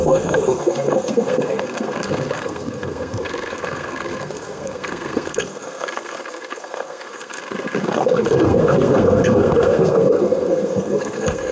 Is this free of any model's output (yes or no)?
no